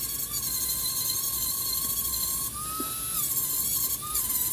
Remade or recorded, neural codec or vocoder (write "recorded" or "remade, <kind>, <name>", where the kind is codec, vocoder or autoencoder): recorded